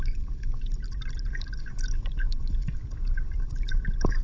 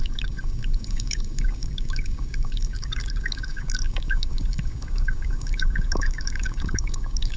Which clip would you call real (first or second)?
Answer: first